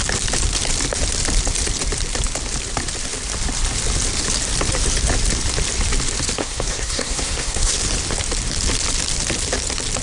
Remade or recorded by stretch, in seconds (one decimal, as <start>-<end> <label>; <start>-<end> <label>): 0.0-6.4 recorded; 6.4-7.8 remade; 7.8-10.0 recorded